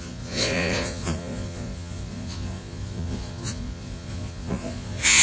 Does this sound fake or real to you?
fake